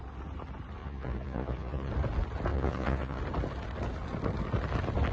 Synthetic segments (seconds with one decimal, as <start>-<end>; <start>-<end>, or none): 0.8-1.9; 2.5-3.2